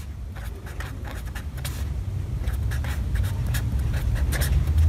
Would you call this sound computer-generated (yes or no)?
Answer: no